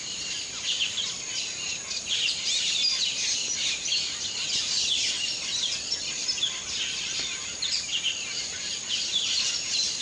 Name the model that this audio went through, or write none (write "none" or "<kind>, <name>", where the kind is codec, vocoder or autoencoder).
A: none